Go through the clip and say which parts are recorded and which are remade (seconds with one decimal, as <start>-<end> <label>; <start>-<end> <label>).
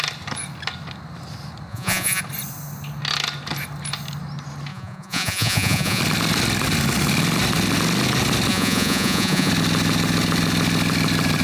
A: 0.0-1.7 recorded; 1.7-2.2 remade; 2.2-4.7 recorded; 4.7-6.0 remade; 6.0-8.5 recorded; 8.5-9.5 remade; 9.5-11.4 recorded